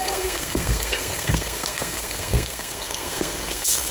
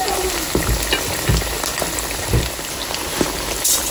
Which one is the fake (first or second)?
first